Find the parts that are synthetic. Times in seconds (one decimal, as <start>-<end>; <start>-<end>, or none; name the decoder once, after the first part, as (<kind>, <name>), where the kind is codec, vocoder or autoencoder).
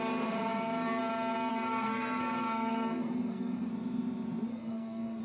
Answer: 1.5-3.7 (codec, SNAC); 4.5-5.2